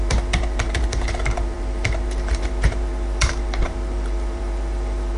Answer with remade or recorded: remade